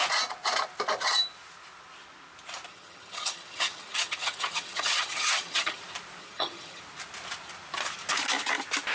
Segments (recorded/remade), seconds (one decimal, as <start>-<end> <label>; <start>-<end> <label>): 0.0-2.7 recorded; 2.7-5.8 remade; 5.8-6.2 recorded; 6.2-6.8 remade; 6.8-8.9 recorded